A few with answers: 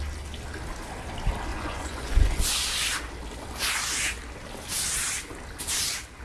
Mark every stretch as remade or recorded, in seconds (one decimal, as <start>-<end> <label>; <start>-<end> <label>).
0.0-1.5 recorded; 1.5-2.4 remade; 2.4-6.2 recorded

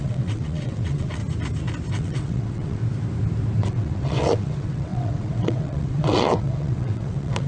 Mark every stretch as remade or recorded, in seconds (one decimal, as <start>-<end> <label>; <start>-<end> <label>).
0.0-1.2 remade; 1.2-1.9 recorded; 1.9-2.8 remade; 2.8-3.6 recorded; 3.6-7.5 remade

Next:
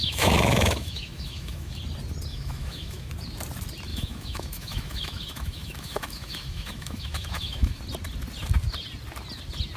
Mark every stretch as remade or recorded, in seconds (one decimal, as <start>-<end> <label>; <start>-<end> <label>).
0.0-1.8 remade; 1.8-2.3 recorded; 2.3-3.1 remade; 3.1-3.9 recorded; 3.9-7.8 remade; 7.8-9.8 recorded